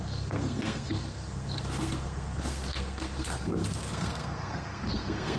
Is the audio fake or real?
fake